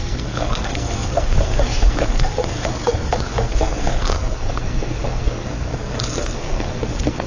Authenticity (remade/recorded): remade